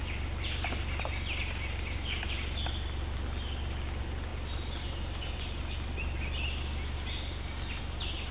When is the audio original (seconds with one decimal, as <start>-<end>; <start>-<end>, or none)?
0.0-8.3